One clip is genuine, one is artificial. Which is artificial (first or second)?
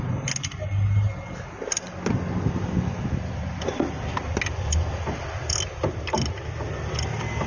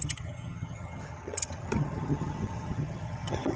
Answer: second